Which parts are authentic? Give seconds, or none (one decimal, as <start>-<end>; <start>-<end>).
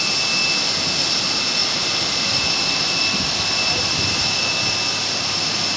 0.0-1.6; 4.5-5.8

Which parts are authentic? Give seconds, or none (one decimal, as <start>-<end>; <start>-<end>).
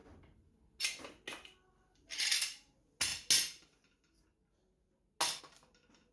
0.0-6.1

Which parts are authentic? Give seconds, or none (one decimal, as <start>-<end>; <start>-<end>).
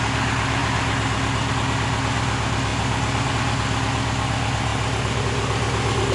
0.0-0.6; 1.5-2.7; 3.3-6.1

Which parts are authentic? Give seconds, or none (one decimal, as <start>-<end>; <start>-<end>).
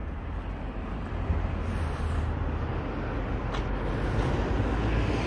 0.0-5.3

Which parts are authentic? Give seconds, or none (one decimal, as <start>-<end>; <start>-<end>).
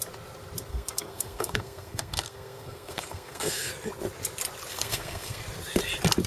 0.0-0.7; 3.7-4.7; 5.4-6.3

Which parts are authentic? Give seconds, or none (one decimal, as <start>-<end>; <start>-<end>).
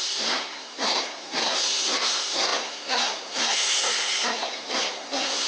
none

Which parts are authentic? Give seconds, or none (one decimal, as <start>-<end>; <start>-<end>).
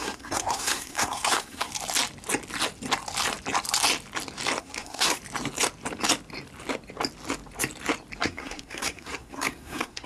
1.7-4.6; 5.2-8.2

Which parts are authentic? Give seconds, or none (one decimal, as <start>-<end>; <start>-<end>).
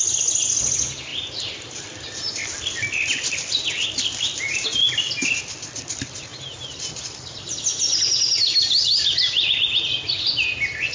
0.0-10.9